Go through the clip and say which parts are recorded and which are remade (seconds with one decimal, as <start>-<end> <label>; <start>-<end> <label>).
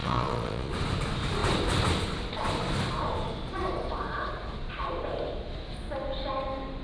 0.0-0.7 remade; 0.7-6.8 recorded